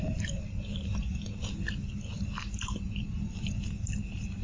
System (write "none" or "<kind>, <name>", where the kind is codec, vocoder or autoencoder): none